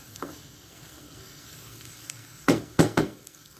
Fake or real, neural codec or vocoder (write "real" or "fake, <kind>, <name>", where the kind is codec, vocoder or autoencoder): fake, codec, SNAC